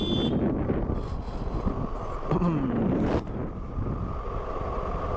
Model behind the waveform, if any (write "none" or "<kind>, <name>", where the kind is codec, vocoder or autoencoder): none